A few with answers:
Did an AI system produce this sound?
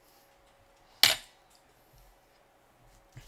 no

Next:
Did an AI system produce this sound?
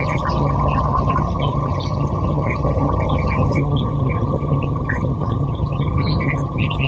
yes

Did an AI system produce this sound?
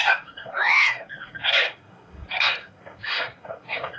yes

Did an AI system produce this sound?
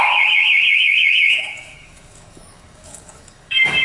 yes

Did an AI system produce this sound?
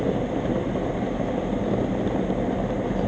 no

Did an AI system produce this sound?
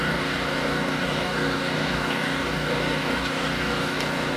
yes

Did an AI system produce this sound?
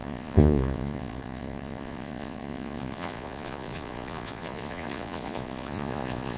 yes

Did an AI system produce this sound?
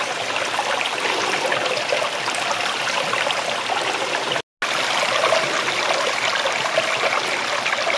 no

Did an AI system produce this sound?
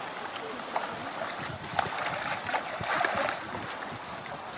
no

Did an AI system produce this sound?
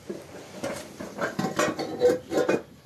no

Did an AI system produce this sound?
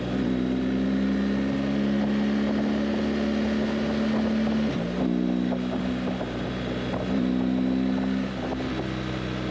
no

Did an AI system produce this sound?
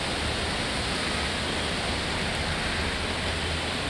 no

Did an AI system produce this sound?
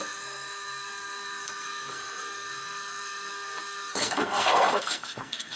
yes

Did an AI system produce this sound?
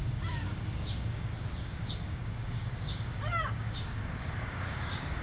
yes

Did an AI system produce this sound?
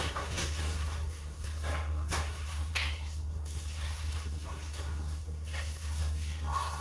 yes